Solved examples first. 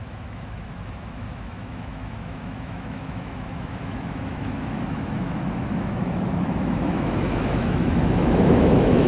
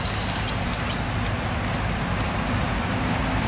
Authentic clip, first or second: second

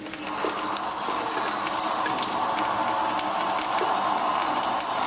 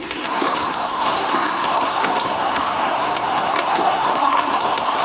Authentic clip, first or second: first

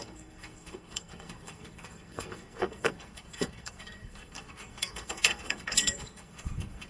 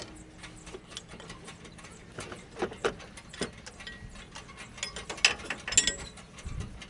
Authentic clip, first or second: second